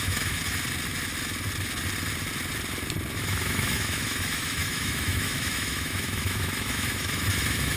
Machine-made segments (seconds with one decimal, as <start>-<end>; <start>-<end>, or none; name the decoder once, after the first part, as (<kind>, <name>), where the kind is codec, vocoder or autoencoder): 0.0-0.4 (autoencoder, DAC-VAE); 3.1-7.8